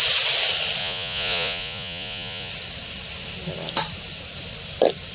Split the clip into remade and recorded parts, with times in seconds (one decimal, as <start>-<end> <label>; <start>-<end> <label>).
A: 0.0-0.8 recorded; 0.8-2.5 remade; 2.5-5.1 recorded